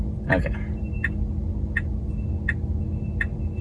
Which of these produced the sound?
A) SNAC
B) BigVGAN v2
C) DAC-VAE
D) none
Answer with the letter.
D